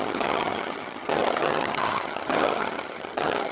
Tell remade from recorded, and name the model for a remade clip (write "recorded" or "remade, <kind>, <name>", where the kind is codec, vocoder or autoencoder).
remade, vocoder, HiFi-GAN